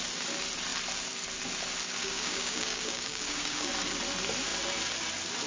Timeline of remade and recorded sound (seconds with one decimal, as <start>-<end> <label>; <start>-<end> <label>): 0.0-2.0 recorded; 2.0-3.7 remade; 3.7-5.5 recorded